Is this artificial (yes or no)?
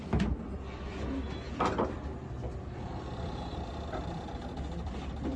no